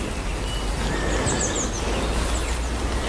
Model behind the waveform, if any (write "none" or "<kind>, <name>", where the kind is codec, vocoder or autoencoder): none